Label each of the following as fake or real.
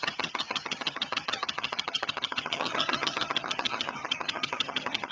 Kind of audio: fake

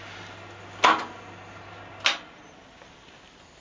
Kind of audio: real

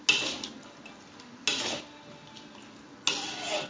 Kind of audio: real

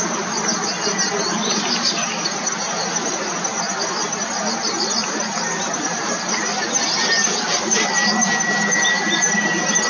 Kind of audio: real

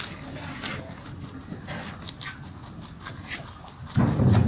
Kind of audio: real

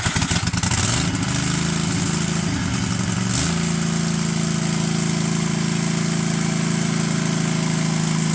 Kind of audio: real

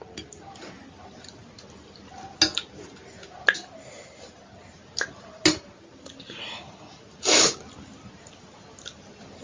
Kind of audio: real